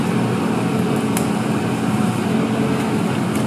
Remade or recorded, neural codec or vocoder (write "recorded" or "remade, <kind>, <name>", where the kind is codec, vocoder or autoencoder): recorded